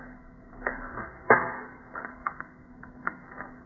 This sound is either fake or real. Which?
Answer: fake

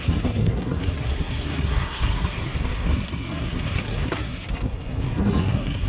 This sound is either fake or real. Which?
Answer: fake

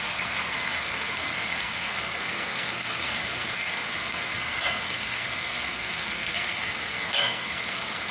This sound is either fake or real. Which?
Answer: fake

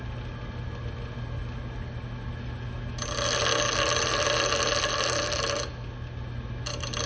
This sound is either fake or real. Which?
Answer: real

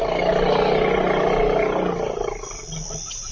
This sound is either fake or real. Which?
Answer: real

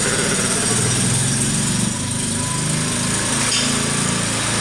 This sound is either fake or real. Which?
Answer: real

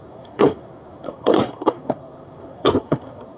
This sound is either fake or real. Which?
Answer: fake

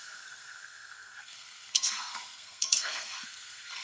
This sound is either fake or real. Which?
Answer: fake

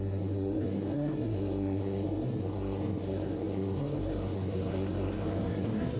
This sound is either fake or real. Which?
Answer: fake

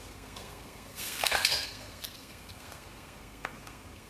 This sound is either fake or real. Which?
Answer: fake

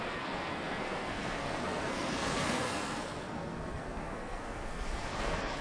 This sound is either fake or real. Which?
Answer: fake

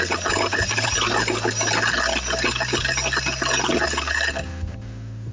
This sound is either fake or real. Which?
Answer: real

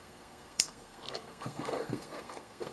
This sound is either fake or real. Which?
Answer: fake